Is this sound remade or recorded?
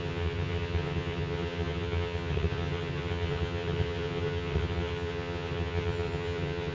remade